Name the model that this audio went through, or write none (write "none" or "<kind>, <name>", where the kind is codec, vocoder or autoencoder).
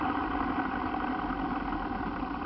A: none